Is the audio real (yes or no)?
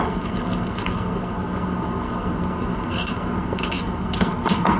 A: no